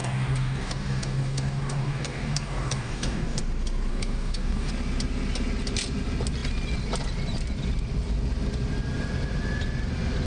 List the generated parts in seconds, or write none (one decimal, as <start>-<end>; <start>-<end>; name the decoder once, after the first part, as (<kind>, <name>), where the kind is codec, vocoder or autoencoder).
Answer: 0.0-3.4 (codec, DAC); 3.9-4.7